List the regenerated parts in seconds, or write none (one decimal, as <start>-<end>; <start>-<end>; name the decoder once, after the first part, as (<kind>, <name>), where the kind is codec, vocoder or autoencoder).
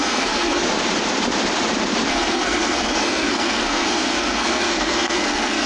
0.0-0.6 (codec, SNAC); 2.1-5.7